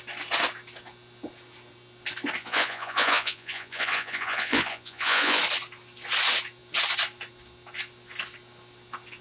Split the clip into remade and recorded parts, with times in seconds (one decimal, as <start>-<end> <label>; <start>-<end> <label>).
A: 0.0-2.4 recorded; 2.4-5.4 remade; 5.4-9.2 recorded